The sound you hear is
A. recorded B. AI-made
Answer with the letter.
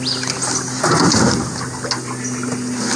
A